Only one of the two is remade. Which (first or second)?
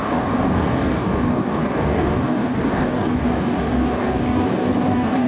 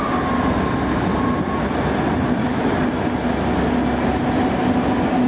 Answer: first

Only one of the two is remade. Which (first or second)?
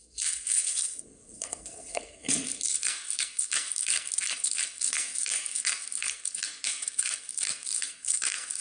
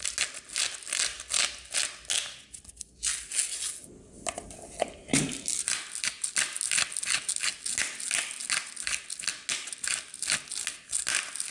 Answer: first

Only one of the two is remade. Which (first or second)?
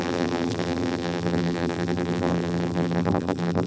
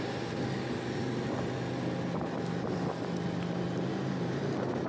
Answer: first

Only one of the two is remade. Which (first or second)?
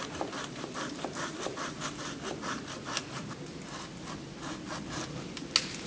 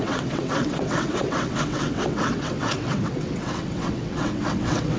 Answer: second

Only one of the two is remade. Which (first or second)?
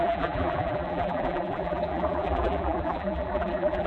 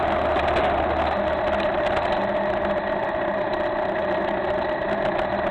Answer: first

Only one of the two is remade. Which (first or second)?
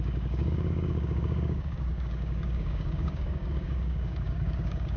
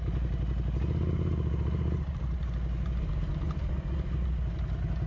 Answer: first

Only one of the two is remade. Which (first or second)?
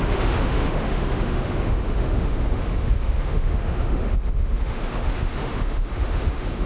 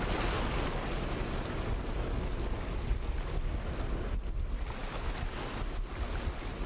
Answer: first